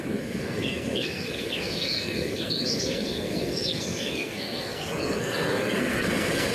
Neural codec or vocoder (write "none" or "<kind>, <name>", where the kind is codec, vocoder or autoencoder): codec, SNAC